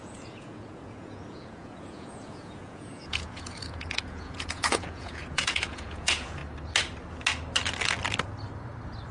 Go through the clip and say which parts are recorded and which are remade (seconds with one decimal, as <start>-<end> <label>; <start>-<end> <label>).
0.0-6.4 remade; 6.4-9.1 recorded